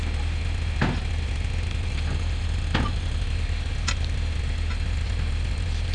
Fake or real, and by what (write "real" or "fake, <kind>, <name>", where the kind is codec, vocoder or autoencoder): real